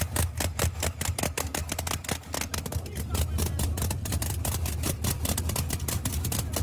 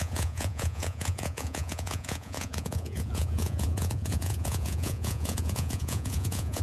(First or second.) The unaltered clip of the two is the first